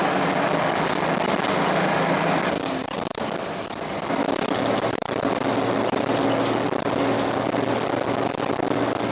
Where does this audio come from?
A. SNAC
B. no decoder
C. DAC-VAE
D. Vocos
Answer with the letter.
B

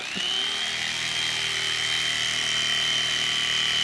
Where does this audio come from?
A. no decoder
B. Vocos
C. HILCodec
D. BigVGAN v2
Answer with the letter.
A